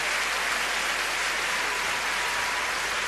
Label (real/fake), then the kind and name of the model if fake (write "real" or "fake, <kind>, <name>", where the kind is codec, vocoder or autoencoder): real